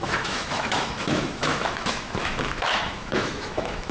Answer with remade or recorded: remade